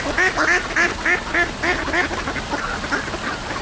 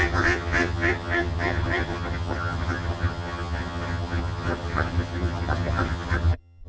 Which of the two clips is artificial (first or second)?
second